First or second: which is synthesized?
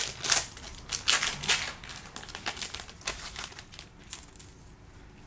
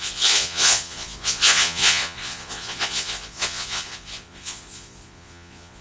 second